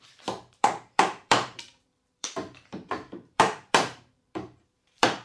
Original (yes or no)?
no